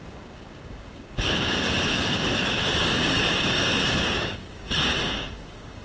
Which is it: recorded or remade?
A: remade